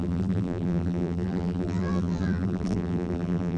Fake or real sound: fake